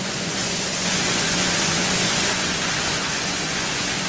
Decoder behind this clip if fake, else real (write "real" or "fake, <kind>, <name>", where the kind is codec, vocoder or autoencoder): fake, vocoder, Vocos